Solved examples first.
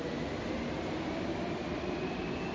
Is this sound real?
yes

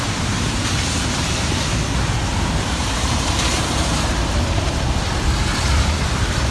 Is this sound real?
no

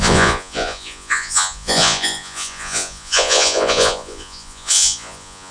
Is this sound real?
no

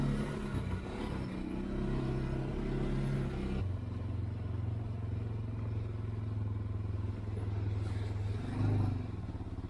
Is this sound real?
yes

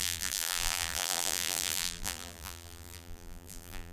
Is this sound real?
no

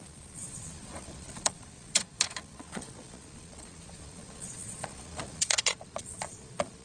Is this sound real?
no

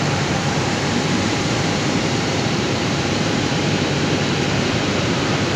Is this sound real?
no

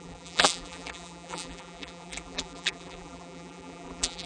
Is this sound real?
no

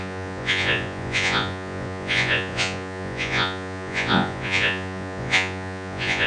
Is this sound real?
no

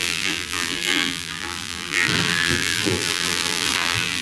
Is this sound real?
no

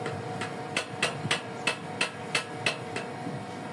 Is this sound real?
yes